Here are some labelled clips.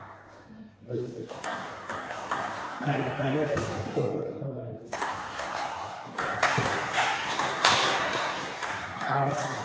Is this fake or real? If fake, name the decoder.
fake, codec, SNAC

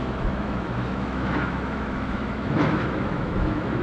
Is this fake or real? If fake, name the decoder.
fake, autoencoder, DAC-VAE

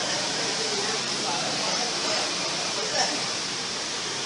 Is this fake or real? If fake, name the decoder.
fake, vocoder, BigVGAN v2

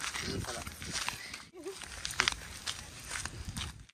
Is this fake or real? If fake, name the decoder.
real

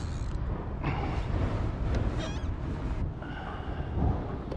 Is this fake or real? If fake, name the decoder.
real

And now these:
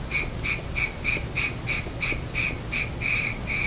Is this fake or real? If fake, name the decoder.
real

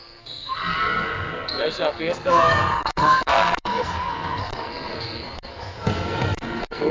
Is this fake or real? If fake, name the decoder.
fake, codec, SNAC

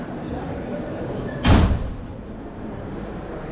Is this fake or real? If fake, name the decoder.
fake, vocoder, BigVGAN v2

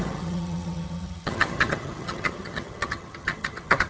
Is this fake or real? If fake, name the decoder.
fake, vocoder, HiFi-GAN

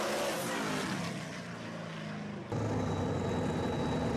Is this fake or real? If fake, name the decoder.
real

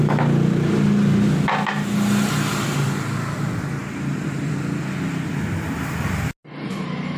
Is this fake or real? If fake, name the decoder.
real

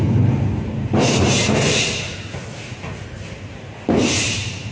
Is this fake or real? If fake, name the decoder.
real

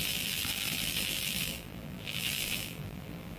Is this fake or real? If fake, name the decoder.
fake, vocoder, BigVGAN v2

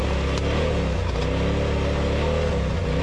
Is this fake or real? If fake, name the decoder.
real